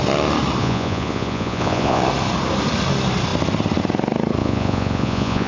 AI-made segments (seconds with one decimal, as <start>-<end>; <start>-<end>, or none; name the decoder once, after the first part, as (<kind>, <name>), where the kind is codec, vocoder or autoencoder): 0.6-2.0 (vocoder, Vocos); 4.4-5.5